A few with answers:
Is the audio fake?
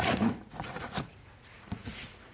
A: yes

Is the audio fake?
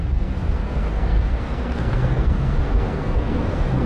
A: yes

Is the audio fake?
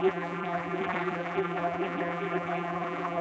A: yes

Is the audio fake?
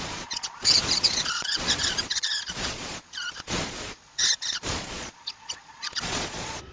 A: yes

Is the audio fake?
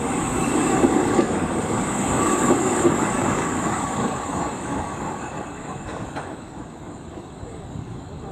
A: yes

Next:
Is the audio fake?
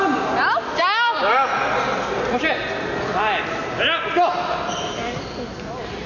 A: no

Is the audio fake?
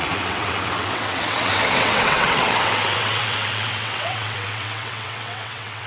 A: yes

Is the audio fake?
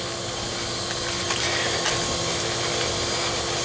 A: no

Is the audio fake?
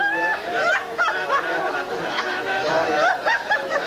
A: yes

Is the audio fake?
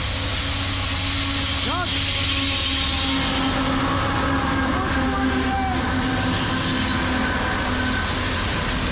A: no